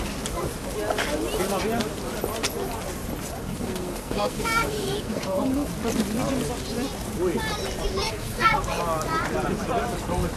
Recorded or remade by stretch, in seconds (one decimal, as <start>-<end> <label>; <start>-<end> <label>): 0.0-3.4 recorded; 3.4-5.7 remade; 5.7-7.9 recorded; 7.9-8.8 remade; 8.8-10.4 recorded